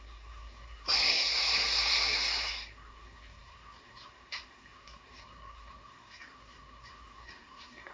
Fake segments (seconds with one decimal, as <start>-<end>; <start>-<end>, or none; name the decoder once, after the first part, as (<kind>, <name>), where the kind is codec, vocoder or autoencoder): 0.0-7.9 (codec, SNAC)

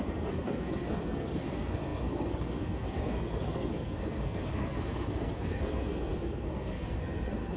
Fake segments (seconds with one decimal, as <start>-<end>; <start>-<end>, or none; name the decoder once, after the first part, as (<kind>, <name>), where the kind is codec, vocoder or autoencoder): 0.0-7.6 (codec, SNAC)

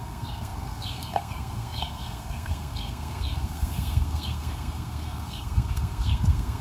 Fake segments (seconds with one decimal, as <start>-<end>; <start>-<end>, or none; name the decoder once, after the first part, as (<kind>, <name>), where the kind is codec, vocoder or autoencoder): 0.0-6.6 (codec, SNAC)

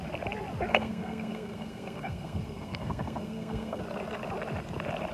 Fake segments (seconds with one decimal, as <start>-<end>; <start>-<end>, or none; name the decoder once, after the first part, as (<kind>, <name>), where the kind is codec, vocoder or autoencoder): 0.7-3.8 (codec, SNAC)

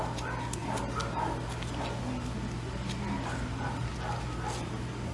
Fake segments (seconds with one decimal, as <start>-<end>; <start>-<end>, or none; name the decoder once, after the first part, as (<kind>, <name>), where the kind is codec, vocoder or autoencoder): none